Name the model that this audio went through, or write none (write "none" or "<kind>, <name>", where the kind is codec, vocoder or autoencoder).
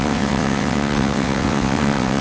vocoder, WaveNeXt